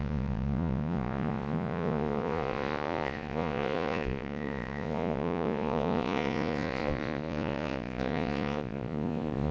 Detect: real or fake fake